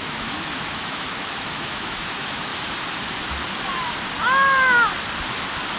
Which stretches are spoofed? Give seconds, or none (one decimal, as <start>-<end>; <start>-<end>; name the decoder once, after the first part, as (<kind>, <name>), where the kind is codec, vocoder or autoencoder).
0.0-2.5 (autoencoder, DAC-VAE)